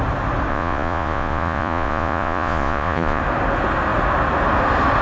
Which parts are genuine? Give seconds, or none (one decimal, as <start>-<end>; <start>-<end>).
0.0-0.5; 3.2-5.0